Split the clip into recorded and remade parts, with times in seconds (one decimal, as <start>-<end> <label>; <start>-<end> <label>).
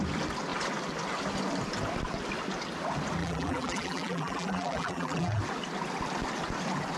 0.0-3.2 recorded; 3.2-5.4 remade; 5.4-7.0 recorded